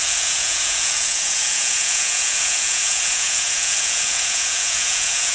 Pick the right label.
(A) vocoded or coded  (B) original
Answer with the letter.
A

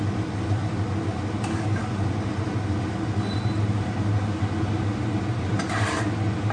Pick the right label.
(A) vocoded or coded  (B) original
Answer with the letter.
B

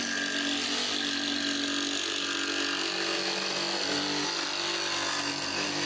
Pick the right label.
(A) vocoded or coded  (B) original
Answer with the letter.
B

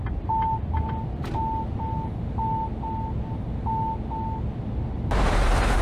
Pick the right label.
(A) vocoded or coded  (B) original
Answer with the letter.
B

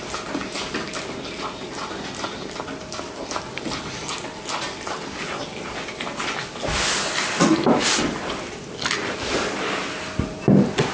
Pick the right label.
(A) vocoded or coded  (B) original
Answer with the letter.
B